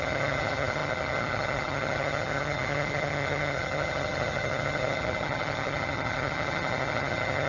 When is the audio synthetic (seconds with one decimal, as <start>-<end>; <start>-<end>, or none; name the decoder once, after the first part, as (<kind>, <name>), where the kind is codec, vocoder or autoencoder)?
0.0-7.5 (vocoder, HiFi-GAN)